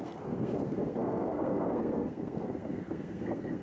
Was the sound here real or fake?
fake